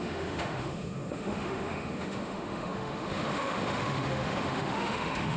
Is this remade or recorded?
remade